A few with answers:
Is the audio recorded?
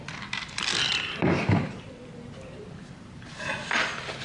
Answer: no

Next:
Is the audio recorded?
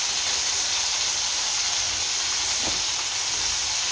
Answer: yes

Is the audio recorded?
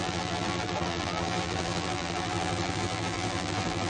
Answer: no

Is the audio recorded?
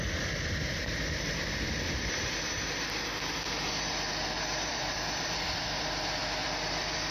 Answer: no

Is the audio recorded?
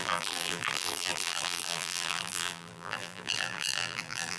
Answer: no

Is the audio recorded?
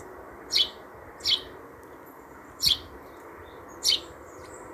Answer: yes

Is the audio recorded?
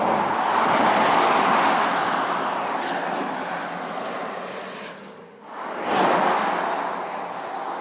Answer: yes